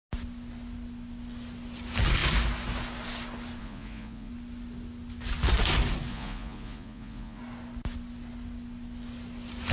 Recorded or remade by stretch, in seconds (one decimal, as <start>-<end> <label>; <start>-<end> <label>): 0.0-3.6 recorded; 3.6-4.3 remade; 4.3-6.1 recorded; 6.1-7.4 remade; 7.4-9.7 recorded